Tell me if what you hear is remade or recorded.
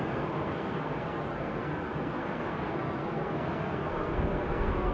remade